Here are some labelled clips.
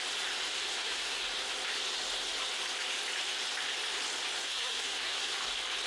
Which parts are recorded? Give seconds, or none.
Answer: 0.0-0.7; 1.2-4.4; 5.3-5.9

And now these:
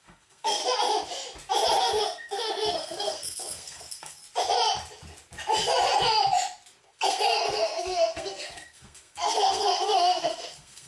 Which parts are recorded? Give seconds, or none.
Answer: 0.6-1.8; 4.2-6.8

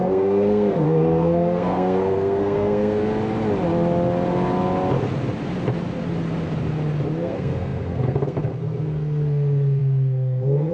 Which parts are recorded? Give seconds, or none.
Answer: 3.0-7.2

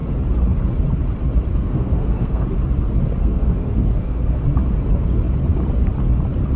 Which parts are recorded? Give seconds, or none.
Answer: 0.0-1.5; 2.5-3.2; 4.4-6.6

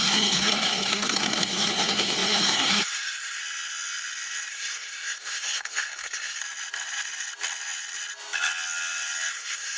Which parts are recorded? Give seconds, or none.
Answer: 3.4-4.5; 6.4-9.3